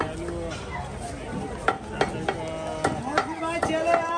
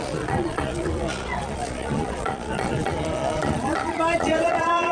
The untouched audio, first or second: first